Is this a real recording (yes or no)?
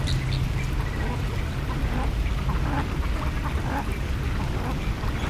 yes